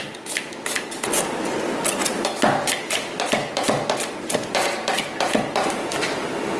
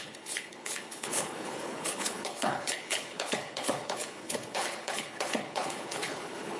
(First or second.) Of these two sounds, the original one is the first